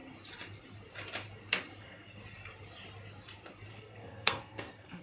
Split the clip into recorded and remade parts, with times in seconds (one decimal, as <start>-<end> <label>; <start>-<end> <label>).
0.0-1.8 recorded; 1.8-2.2 remade; 2.2-3.7 recorded; 3.7-5.0 remade